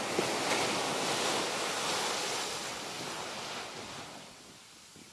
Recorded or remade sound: recorded